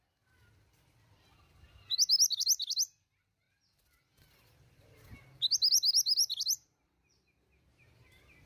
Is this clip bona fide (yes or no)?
yes